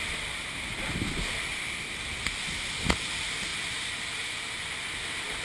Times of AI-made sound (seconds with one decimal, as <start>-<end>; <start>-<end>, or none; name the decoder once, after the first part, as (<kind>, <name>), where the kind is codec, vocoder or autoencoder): none